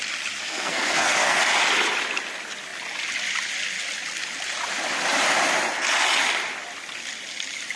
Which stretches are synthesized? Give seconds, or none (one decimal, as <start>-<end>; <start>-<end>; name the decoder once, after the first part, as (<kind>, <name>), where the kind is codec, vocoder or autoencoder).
0.4-1.4 (codec, SNAC)